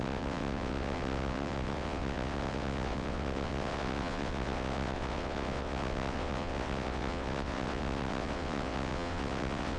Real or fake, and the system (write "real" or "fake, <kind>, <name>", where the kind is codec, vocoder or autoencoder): fake, vocoder, WaveNeXt